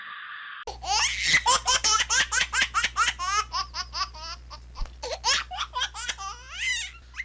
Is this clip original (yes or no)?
yes